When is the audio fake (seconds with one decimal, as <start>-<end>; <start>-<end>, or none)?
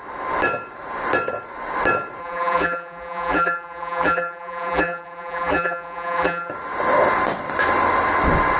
2.2-6.5